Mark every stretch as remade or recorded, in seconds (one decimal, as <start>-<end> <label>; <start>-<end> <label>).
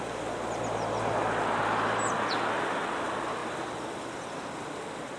0.0-5.2 recorded